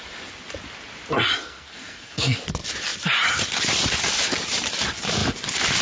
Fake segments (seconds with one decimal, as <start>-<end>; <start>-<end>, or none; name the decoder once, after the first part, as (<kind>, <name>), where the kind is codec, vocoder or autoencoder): 1.4-2.4 (codec, SNAC)